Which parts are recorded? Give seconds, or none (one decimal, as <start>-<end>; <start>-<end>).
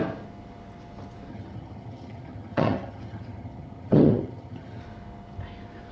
0.0-1.3; 4.8-5.9